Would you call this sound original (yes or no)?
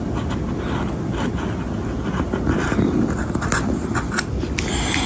yes